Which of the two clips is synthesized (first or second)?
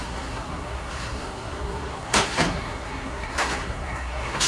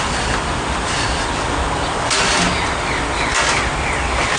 first